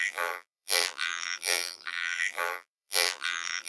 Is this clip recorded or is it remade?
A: remade